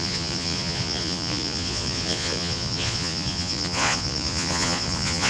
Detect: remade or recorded remade